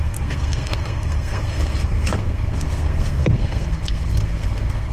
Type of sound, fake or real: fake